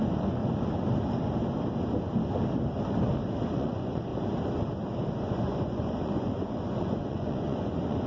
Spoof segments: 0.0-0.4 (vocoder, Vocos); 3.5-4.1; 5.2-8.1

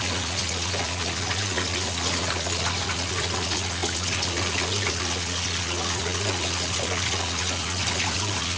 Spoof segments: 0.0-8.6 (vocoder, Vocos)

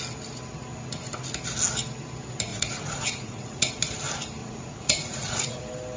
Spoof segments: 2.5-3.7 (vocoder, Vocos); 4.4-5.6

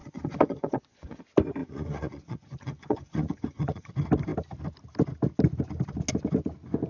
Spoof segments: 0.0-1.2 (vocoder, Vocos); 1.6-3.9

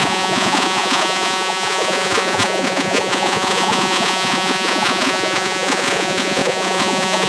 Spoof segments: 0.0-7.3 (vocoder, Vocos)